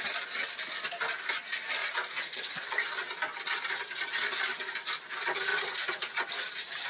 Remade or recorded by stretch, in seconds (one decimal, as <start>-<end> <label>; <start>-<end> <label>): 0.0-1.8 recorded; 1.8-2.5 remade; 2.5-5.5 recorded; 5.5-6.2 remade; 6.2-6.9 recorded